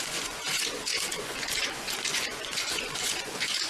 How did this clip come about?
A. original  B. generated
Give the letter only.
B